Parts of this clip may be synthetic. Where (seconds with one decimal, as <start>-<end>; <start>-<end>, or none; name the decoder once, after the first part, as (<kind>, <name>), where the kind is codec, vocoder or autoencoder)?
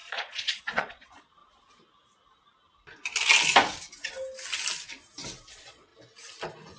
0.0-1.4 (vocoder, Vocos); 5.5-5.9